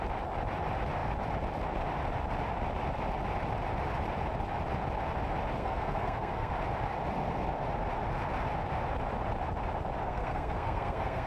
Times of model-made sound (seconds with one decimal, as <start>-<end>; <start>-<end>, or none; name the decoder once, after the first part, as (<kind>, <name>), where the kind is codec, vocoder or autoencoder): 5.6-6.5 (codec, SNAC); 10.0-11.3